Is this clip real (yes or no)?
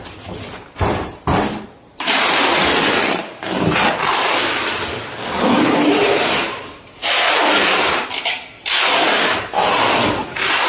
yes